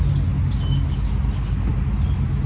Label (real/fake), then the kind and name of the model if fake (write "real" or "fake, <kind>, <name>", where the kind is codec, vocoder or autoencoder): real